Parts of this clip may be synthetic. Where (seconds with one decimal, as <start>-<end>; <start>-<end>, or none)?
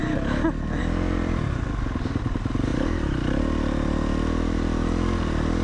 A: 2.7-3.4